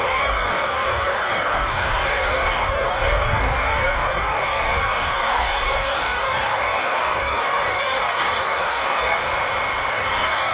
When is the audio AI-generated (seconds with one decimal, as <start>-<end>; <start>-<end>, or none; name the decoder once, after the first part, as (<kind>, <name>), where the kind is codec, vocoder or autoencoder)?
0.0-9.2 (codec, DAC); 9.9-10.5